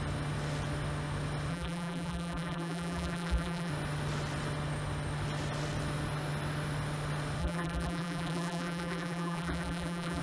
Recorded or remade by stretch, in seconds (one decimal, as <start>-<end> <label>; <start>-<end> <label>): 0.0-1.5 recorded; 1.5-3.7 remade; 3.7-7.4 recorded; 7.4-10.2 remade